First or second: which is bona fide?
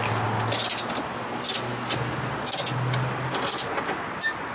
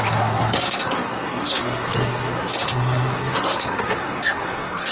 first